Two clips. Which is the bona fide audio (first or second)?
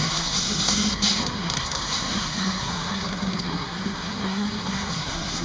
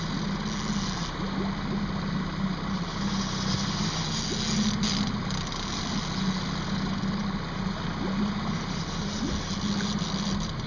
second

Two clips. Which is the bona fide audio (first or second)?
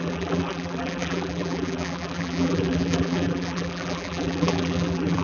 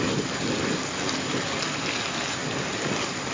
second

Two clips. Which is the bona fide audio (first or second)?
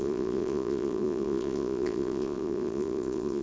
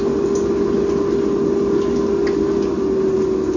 second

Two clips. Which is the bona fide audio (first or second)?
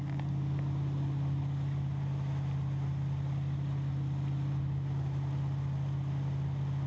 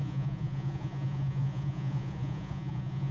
first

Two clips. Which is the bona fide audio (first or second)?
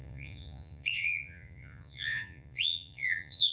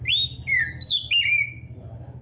second